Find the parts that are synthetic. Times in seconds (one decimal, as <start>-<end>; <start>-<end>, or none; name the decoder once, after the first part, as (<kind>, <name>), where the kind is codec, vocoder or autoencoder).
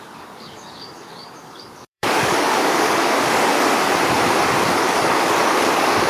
0.0-3.5 (codec, DAC); 4.4-6.1